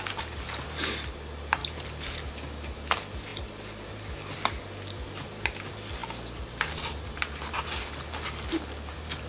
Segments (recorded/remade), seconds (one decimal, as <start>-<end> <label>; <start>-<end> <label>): 0.0-9.3 recorded